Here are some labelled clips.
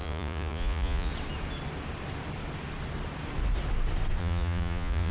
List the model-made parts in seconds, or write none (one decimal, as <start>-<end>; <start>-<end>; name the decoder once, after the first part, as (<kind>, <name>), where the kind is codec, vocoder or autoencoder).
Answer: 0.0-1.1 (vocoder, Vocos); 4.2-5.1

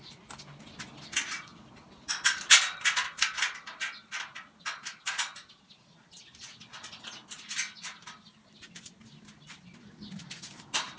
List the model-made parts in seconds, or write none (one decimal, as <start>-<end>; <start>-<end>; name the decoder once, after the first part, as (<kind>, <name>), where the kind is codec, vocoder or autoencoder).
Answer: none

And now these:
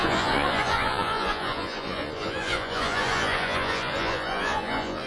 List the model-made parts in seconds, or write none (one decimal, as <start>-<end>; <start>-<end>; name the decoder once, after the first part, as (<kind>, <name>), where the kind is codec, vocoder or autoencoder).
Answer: 0.0-5.1 (vocoder, Vocos)

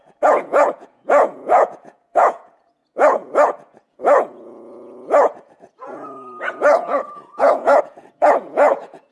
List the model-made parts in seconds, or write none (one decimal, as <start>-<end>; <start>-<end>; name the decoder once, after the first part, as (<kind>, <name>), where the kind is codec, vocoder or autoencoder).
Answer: 0.0-9.1 (vocoder, Vocos)

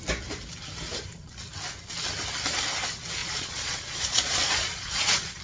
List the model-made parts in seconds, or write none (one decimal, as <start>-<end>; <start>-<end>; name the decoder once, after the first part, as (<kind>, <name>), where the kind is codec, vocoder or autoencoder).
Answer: 3.2-5.4 (vocoder, Vocos)